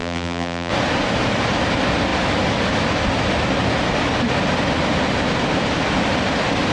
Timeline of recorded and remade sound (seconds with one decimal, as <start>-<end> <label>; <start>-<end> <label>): 0.0-0.7 remade; 0.7-6.7 recorded